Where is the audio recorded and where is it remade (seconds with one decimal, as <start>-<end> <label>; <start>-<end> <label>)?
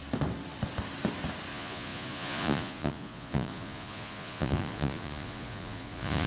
0.0-1.5 recorded; 1.5-6.3 remade